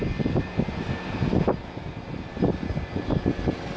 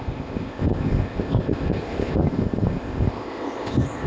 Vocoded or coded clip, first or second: second